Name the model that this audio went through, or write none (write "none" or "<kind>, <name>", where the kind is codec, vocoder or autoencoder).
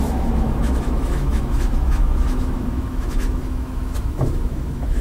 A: autoencoder, DAC-VAE